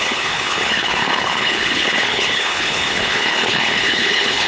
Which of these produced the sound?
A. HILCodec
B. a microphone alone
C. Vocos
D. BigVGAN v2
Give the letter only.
A